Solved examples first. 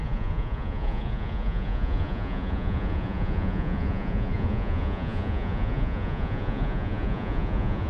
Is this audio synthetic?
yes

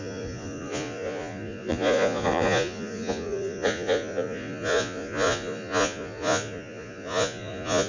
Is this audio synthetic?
yes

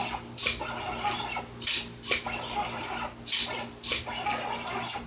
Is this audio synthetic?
no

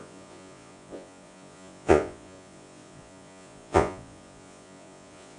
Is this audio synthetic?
yes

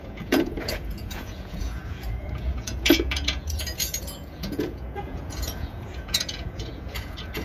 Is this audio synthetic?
yes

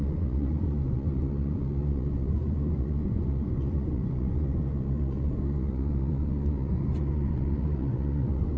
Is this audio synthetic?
yes